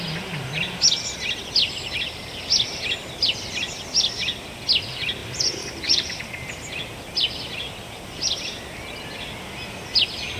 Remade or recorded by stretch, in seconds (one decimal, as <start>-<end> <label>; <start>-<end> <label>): 0.0-5.2 recorded; 5.2-6.2 remade; 6.2-10.4 recorded